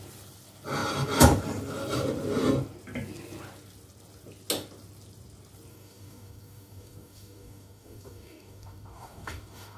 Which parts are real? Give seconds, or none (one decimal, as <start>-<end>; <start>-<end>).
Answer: 0.0-5.7